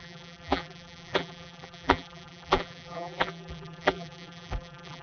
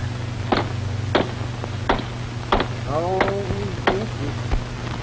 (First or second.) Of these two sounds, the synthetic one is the first